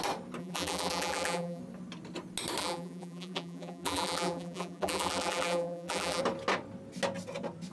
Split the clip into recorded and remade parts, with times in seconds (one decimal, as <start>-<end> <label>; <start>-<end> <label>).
0.0-0.4 recorded; 0.4-1.6 remade; 1.6-2.6 recorded; 2.6-6.2 remade; 6.2-7.7 recorded